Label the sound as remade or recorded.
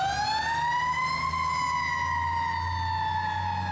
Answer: recorded